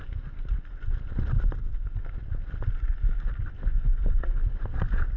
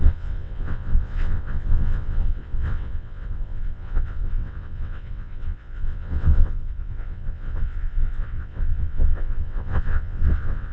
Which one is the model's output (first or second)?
second